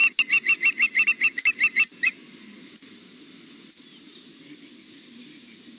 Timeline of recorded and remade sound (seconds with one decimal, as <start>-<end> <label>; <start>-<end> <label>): 0.0-5.8 recorded